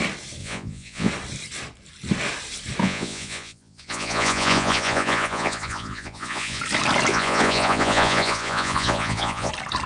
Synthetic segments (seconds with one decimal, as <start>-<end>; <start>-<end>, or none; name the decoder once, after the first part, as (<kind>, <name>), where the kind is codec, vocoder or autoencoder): 0.4-1.1 (vocoder, Vocos); 2.8-6.6; 7.1-9.5